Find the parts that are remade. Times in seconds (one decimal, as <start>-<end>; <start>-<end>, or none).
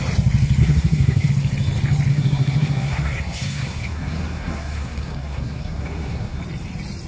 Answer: 0.6-1.3; 2.1-6.4